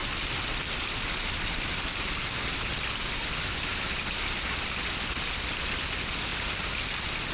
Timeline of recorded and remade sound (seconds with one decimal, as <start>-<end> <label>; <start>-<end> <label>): 0.0-7.3 recorded